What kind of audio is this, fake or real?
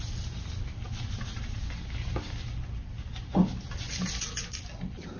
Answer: real